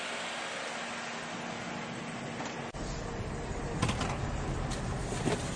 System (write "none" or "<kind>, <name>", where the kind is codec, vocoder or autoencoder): none